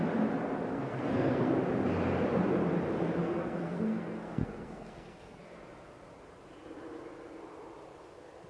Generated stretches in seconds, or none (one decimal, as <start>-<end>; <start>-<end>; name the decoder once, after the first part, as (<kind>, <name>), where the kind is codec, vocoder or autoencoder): 0.7-1.5 (codec, SNAC); 3.2-5.4

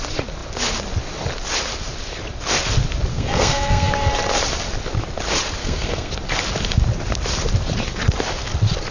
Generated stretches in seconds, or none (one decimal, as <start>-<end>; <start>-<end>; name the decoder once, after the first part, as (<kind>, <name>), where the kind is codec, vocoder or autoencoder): 3.1-4.1 (codec, SNAC); 5.6-6.1

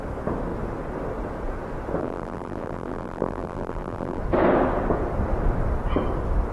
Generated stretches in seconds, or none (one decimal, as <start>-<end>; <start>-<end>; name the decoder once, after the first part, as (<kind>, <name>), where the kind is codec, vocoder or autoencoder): 2.0-4.2 (vocoder, BigVGAN v2)

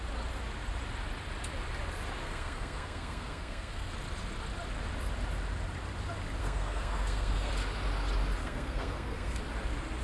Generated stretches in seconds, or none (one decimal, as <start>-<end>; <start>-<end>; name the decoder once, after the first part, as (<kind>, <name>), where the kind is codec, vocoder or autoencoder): 2.2-3.9 (codec, SNAC); 6.4-7.5; 8.4-9.4